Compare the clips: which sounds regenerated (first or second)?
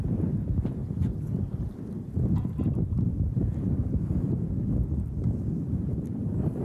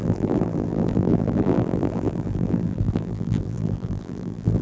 second